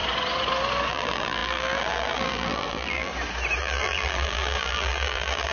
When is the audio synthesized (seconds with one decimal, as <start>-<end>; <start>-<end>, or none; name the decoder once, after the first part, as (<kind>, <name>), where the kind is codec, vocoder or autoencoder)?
0.9-3.1 (vocoder, BigVGAN v2); 3.6-5.5